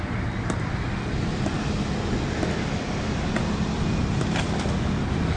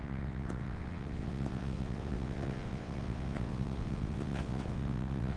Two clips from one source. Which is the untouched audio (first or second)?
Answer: first